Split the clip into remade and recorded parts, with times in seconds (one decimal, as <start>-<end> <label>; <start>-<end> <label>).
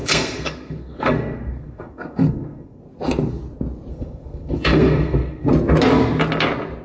0.0-2.8 remade; 2.8-3.9 recorded; 3.9-5.5 remade; 5.5-6.8 recorded